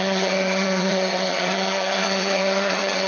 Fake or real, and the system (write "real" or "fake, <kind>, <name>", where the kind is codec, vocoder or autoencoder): fake, vocoder, HiFi-GAN